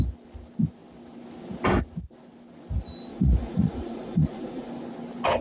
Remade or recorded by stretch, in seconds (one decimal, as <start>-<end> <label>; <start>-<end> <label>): 0.0-3.1 recorded; 3.1-4.7 remade; 4.7-5.4 recorded

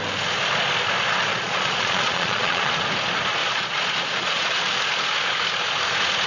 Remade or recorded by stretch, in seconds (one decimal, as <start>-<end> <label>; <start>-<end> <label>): 0.0-1.3 recorded; 1.3-2.7 remade; 2.7-3.4 recorded; 3.4-4.7 remade; 4.7-6.3 recorded

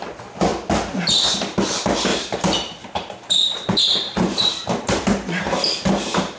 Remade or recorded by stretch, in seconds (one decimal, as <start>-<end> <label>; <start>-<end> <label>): 0.0-2.1 recorded; 2.1-5.4 remade; 5.4-6.4 recorded

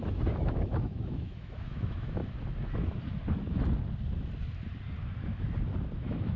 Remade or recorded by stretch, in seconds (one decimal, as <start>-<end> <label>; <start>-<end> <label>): 0.0-2.2 remade; 2.2-6.0 recorded; 6.0-6.4 remade

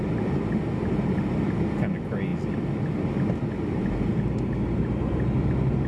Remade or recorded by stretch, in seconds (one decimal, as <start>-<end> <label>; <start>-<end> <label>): 0.0-5.9 recorded

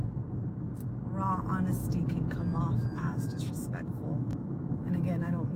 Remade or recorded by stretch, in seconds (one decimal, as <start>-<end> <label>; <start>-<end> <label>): 0.0-1.8 recorded; 1.8-5.6 remade

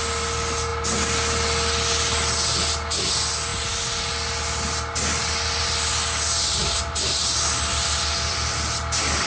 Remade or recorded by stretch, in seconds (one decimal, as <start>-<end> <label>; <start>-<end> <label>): 0.0-9.3 recorded